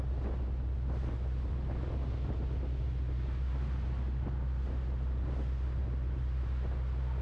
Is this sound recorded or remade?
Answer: recorded